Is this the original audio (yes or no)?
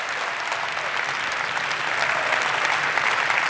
yes